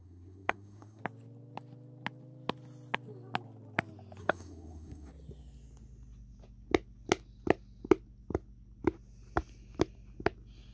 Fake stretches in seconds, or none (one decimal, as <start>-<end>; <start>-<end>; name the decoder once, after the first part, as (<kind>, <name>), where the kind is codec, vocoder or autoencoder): 0.0-1.0 (codec, SNAC); 4.2-5.1